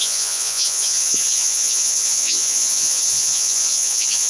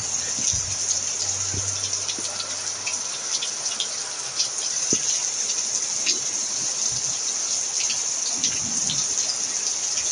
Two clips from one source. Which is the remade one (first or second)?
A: first